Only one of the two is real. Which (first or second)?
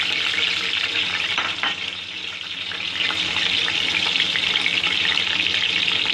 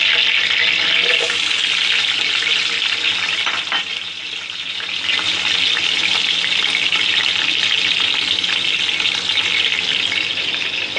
second